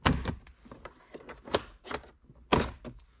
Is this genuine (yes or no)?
yes